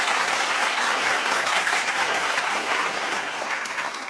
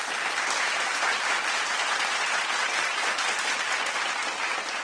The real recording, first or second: second